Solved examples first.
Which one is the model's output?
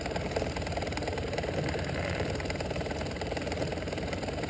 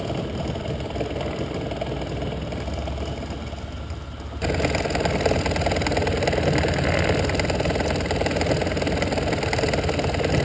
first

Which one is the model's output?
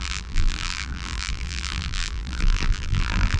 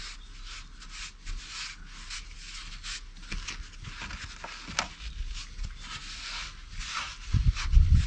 first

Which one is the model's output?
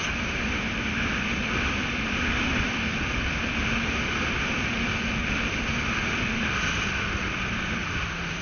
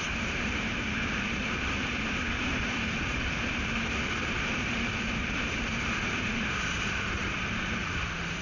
second